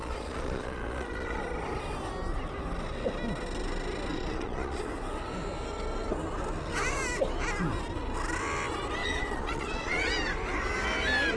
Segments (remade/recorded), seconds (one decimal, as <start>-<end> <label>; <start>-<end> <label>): 0.0-1.4 remade; 1.4-4.1 recorded; 4.1-4.8 remade; 4.8-9.0 recorded; 9.0-10.1 remade; 10.1-11.4 recorded